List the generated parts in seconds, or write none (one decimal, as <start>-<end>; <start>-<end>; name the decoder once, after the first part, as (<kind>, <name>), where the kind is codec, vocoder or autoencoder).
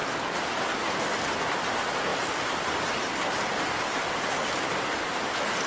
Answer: 2.1-2.9 (vocoder, BigVGAN v2)